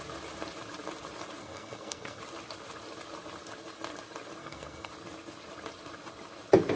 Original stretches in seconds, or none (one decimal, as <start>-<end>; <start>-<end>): 0.0-1.4; 2.2-4.4; 4.9-6.8